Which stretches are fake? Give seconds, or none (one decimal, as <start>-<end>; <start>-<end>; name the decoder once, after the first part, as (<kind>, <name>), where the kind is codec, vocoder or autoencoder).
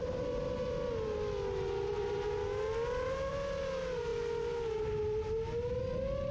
none